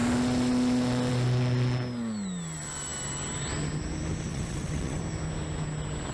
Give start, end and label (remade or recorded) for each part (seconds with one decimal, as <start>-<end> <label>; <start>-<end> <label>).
0.0-4.3 recorded; 4.3-5.0 remade; 5.0-6.1 recorded